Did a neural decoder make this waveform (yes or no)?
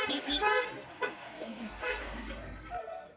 yes